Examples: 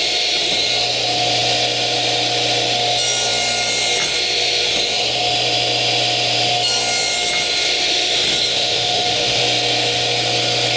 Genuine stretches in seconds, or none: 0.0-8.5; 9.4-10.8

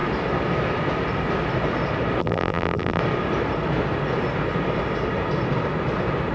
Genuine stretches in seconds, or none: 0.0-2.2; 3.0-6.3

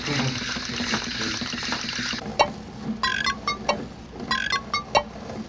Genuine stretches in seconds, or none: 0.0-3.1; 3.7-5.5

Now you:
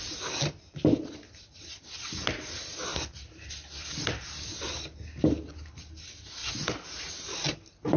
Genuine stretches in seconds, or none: 0.0-8.0

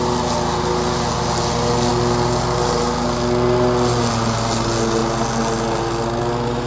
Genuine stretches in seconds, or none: 0.0-6.7